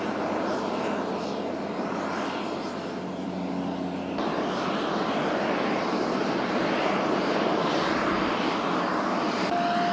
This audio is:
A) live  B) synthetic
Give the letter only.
A